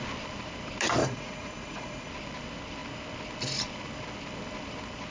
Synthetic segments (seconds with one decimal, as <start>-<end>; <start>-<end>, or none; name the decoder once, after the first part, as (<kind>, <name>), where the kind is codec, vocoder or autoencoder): 1.0-2.1 (vocoder, Vocos)